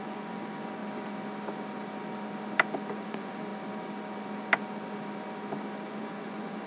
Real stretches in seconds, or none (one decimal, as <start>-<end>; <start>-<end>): 0.8-2.9; 3.5-5.9